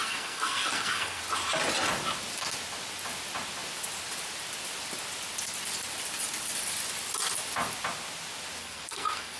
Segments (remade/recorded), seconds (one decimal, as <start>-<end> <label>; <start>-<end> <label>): 0.0-1.2 remade; 1.2-8.6 recorded; 8.6-9.4 remade